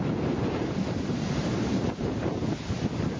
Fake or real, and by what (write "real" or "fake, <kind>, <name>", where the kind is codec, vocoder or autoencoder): fake, vocoder, BigVGAN v2